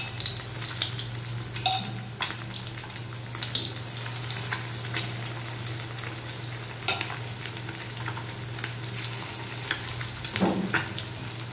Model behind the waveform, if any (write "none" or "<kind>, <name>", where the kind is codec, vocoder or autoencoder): none